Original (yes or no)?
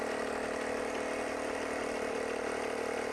yes